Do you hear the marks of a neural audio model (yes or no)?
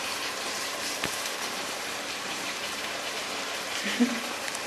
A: yes